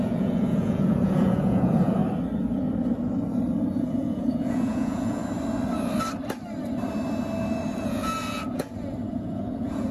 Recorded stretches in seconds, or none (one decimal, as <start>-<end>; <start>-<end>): 2.0-3.7; 5.2-7.9